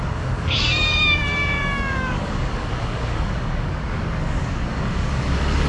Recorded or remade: remade